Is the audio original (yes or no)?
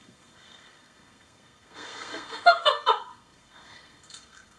no